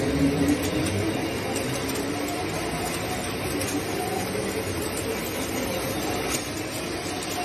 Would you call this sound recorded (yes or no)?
yes